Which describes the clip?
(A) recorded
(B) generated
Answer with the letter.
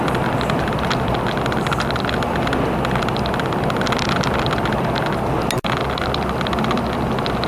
A